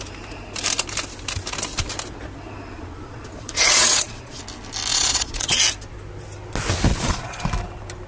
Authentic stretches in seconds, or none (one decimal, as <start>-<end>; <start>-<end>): 0.0-2.7; 4.4-4.9; 5.6-6.9; 7.4-8.1